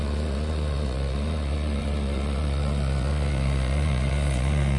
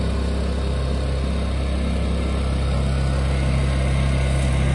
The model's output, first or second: first